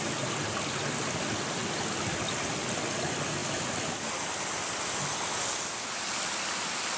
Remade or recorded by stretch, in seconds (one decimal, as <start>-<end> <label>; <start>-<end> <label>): 0.0-1.6 recorded; 1.6-2.5 remade; 2.5-7.0 recorded